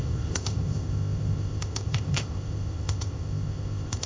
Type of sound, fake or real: fake